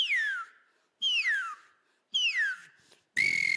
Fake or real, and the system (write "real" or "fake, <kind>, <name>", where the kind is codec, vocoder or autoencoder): real